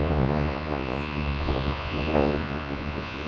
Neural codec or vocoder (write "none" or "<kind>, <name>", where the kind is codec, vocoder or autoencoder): vocoder, Vocos